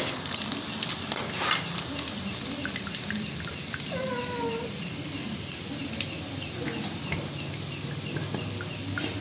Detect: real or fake real